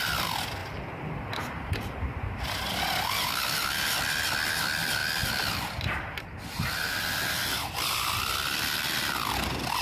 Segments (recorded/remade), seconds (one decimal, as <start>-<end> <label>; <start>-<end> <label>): 0.0-5.0 recorded; 5.0-9.3 remade; 9.3-9.8 recorded